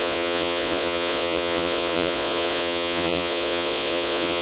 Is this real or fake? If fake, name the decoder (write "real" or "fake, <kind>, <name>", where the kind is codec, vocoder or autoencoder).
fake, vocoder, Vocos